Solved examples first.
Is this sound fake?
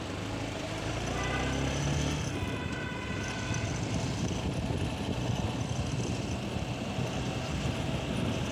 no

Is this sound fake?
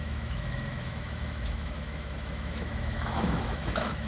yes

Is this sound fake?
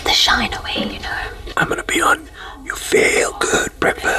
no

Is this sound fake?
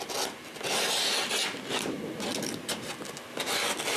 no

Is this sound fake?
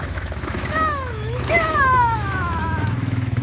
yes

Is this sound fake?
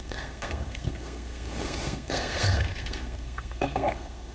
yes